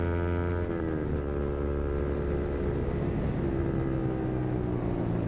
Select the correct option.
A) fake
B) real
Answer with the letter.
B